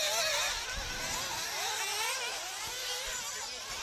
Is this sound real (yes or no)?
yes